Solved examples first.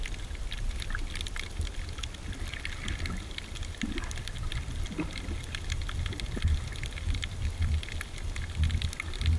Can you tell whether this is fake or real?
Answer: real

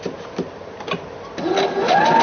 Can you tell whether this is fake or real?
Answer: real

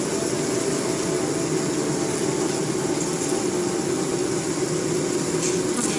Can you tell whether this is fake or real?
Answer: real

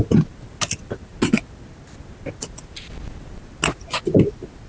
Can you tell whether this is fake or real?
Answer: real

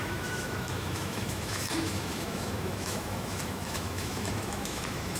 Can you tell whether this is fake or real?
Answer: fake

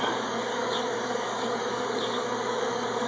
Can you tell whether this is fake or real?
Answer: fake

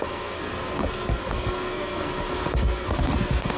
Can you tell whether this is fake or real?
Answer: fake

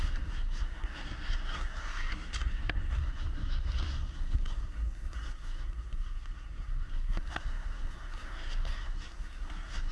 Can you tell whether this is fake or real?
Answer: fake